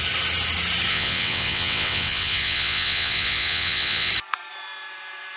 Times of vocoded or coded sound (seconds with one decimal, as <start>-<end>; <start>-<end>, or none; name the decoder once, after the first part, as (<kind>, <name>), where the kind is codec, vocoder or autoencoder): 0.9-4.1 (vocoder, WaveNeXt)